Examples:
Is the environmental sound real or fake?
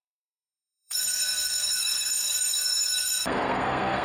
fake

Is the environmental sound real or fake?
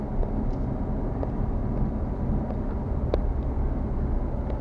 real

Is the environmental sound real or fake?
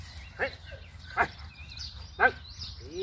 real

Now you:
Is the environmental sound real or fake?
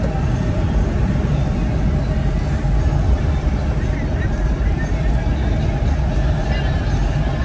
real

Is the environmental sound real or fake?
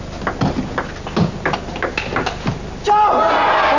real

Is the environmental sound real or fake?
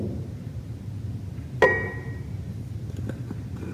real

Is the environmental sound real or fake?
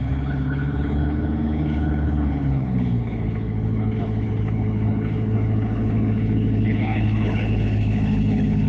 fake